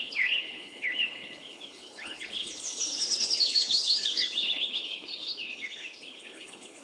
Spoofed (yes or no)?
yes